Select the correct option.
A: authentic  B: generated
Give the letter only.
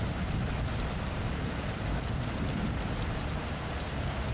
A